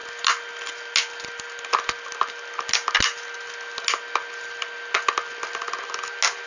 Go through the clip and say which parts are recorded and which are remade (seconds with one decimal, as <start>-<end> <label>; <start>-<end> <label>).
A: 0.0-6.5 recorded